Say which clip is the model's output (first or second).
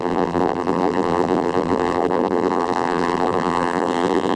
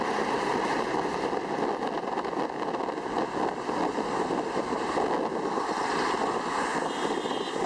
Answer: first